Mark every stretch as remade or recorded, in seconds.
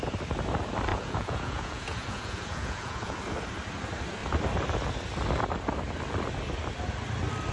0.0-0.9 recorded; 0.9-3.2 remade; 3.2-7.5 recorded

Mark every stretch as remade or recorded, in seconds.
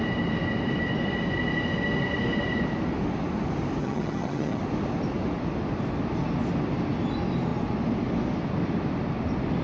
0.0-3.8 recorded; 3.8-4.6 remade; 4.6-9.6 recorded